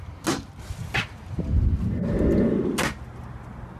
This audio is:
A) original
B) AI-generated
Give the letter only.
A